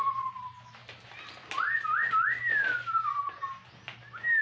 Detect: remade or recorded recorded